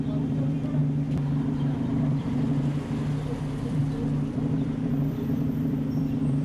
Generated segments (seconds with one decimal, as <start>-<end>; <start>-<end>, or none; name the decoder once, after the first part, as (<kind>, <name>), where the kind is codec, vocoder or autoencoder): 0.0-0.8 (vocoder, BigVGAN v2); 2.0-2.7; 3.4-3.8; 4.3-6.4